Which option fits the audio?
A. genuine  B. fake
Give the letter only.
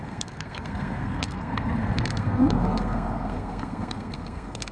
B